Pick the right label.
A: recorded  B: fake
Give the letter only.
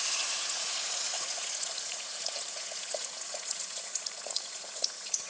B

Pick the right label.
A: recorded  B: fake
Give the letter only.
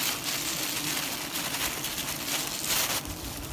A